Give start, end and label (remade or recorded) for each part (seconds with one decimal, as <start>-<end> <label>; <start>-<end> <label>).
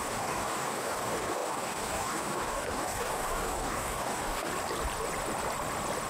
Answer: 0.0-4.5 remade; 4.5-6.1 recorded